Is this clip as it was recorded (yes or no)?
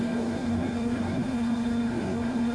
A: no